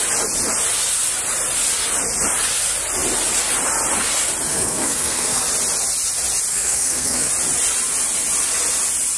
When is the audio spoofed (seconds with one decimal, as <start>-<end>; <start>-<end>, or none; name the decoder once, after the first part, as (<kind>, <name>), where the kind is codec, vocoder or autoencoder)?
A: 4.5-5.4 (codec, SNAC); 6.5-7.3